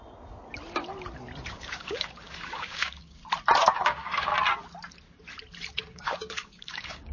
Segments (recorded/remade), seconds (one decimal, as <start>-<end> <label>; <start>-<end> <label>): 0.0-1.5 recorded; 1.5-3.2 remade; 3.2-3.7 recorded; 3.7-4.3 remade; 4.3-5.9 recorded; 5.9-7.1 remade